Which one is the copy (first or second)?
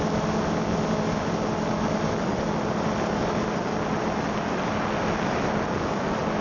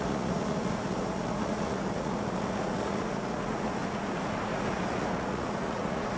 second